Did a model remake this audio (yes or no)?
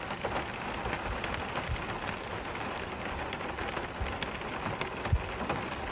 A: no